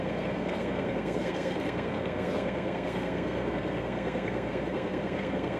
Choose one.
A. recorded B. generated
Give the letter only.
B